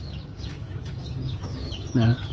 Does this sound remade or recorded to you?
remade